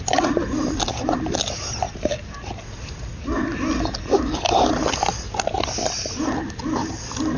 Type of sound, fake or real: real